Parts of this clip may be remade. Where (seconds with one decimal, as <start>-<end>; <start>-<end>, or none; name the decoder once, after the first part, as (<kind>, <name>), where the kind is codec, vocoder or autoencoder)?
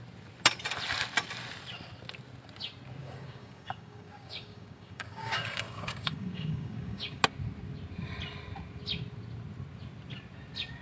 3.0-7.2 (codec, DAC)